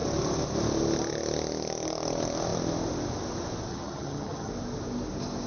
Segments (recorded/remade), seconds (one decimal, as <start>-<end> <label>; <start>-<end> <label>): 0.0-3.7 recorded; 3.7-4.5 remade; 4.5-5.5 recorded